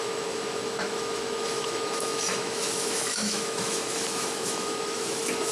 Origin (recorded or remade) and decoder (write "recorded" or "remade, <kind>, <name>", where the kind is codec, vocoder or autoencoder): remade, autoencoder, DAC-VAE